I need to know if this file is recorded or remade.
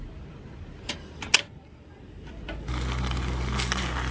recorded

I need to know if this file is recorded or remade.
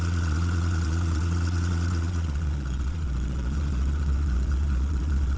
remade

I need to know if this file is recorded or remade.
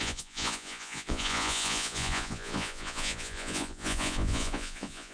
remade